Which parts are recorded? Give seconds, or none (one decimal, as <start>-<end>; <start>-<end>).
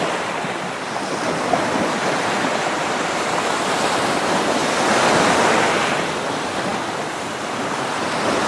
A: 4.6-6.3